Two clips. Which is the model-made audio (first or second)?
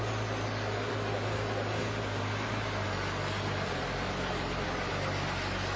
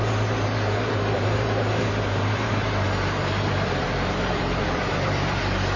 second